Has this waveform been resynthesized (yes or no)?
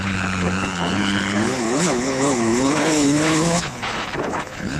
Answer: yes